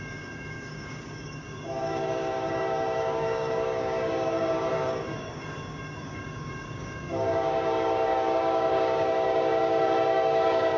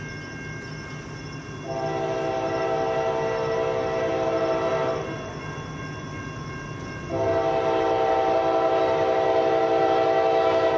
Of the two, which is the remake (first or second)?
first